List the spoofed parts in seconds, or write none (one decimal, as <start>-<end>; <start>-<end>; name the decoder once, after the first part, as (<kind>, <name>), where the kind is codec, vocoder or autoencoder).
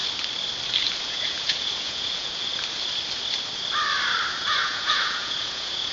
1.0-2.5 (vocoder, Vocos); 4.3-5.9